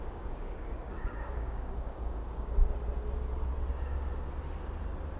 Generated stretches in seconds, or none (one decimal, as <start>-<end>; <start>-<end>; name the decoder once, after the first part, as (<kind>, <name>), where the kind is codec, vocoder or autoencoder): 0.0-2.2 (codec, DAC)